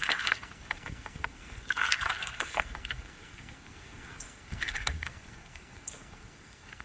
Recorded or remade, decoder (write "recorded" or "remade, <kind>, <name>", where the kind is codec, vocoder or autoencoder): remade, codec, SNAC